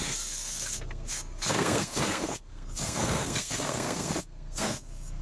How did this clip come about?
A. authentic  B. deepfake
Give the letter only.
B